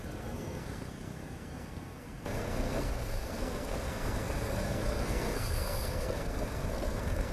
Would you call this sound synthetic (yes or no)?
yes